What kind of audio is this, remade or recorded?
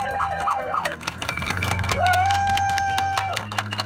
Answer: remade